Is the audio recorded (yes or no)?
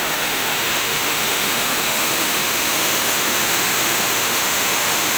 no